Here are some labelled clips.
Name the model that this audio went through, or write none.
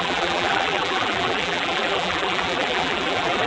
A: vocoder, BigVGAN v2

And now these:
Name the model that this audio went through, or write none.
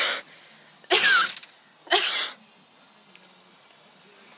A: none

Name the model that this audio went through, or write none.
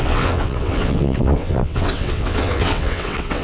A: vocoder, WaveNeXt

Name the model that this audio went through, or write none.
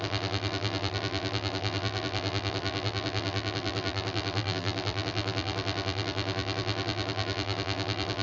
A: vocoder, BigVGAN v2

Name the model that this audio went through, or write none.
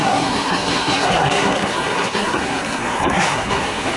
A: codec, SNAC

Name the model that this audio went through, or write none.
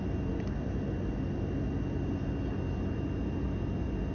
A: none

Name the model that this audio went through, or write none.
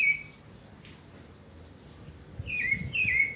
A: none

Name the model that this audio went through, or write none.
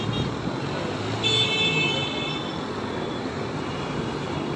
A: none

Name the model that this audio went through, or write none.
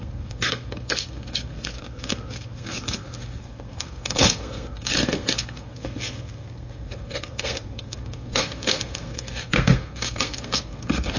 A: codec, SNAC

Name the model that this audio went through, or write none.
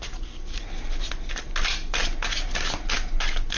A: none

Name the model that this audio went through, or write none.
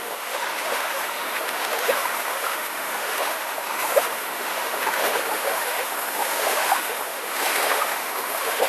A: autoencoder, DAC-VAE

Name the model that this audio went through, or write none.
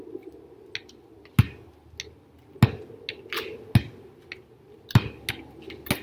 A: none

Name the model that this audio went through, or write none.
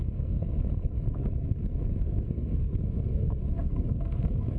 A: codec, SNAC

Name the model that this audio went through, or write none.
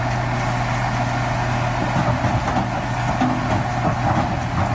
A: none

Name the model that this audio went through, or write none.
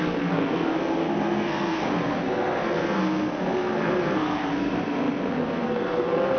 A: codec, SNAC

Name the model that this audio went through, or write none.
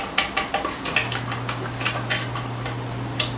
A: none